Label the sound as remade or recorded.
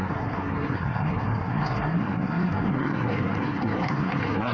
remade